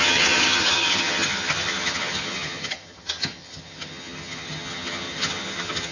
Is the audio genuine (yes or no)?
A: no